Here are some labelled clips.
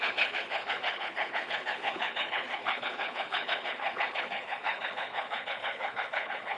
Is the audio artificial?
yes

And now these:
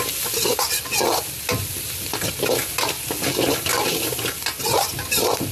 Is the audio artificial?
no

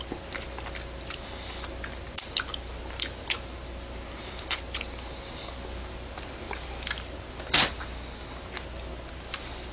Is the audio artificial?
no